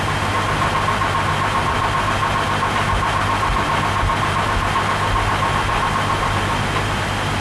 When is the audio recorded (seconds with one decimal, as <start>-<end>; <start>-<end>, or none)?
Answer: 0.0-7.4